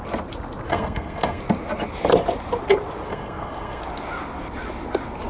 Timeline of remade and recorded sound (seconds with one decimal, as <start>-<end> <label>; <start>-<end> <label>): 0.0-0.7 recorded; 0.7-1.4 remade; 1.4-3.1 recorded; 3.1-3.8 remade; 3.8-5.3 recorded